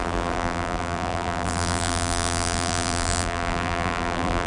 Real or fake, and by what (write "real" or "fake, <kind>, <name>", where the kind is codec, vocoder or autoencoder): fake, vocoder, BigVGAN v2